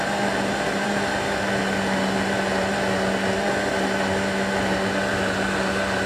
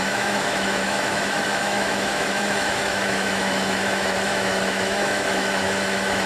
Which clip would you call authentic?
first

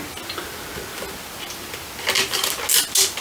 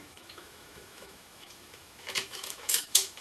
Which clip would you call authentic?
first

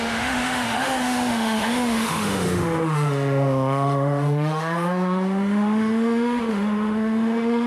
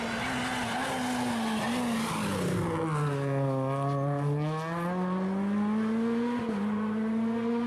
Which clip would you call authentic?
second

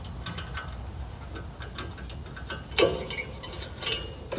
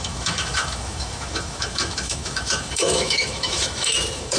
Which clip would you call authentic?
first